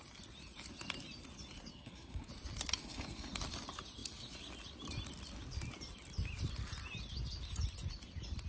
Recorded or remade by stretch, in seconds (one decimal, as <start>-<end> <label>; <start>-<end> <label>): 0.0-1.7 recorded; 1.7-2.3 remade; 2.3-2.8 recorded; 2.8-3.3 remade; 3.3-8.5 recorded